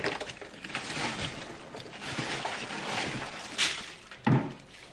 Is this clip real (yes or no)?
yes